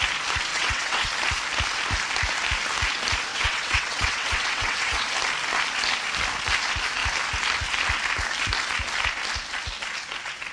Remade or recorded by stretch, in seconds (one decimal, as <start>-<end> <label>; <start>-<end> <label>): 0.0-0.5 recorded; 0.5-1.1 remade; 1.1-3.3 recorded; 3.3-5.1 remade; 5.1-10.5 recorded